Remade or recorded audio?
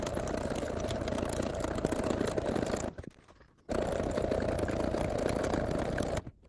recorded